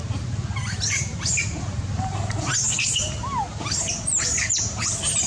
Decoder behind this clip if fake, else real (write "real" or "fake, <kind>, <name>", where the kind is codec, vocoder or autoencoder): real